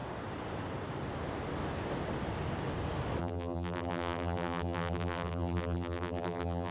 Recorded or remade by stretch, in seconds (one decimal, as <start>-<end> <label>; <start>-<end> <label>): 0.0-3.2 recorded; 3.2-6.7 remade